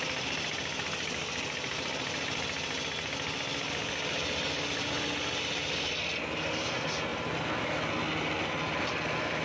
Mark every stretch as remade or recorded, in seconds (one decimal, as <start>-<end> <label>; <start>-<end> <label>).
0.0-9.4 recorded

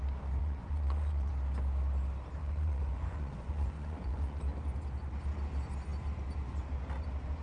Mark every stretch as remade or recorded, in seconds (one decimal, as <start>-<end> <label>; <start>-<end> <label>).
0.0-0.4 recorded; 0.4-1.3 remade; 1.3-2.4 recorded; 2.4-4.4 remade; 4.4-7.4 recorded

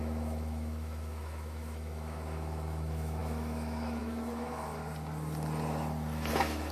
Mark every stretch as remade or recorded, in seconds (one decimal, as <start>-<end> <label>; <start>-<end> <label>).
0.0-4.8 remade; 4.8-6.3 recorded; 6.3-6.7 remade

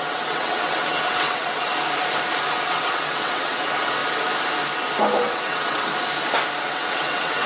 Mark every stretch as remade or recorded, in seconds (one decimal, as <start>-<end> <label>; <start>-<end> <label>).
0.0-1.7 remade; 1.7-2.5 recorded; 2.5-4.0 remade; 4.0-5.2 recorded; 5.2-5.9 remade; 5.9-6.6 recorded; 6.6-7.5 remade